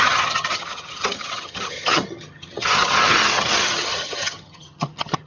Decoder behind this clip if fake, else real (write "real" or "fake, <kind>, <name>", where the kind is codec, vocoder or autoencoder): fake, vocoder, HiFi-GAN